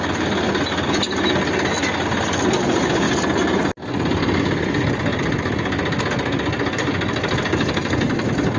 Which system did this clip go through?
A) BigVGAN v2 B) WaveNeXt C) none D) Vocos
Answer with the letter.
C